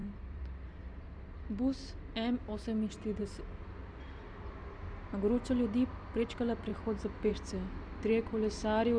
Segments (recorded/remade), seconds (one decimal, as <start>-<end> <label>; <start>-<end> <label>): 0.0-1.5 remade; 1.5-3.2 recorded; 3.2-3.7 remade; 3.7-9.0 recorded